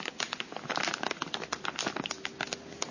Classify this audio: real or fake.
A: real